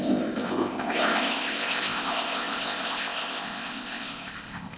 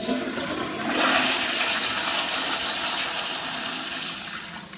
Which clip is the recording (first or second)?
second